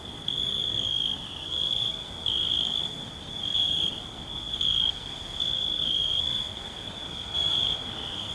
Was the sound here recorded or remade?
remade